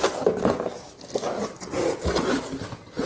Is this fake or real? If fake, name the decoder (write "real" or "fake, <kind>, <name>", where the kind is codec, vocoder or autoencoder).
real